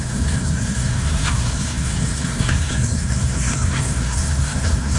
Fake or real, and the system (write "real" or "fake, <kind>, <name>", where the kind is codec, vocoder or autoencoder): fake, codec, SNAC